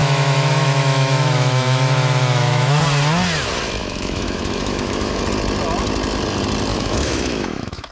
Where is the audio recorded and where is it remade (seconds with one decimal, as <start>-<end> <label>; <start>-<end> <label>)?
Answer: 0.0-2.8 remade; 2.8-3.8 recorded; 3.8-5.2 remade; 5.2-6.7 recorded; 6.7-7.9 remade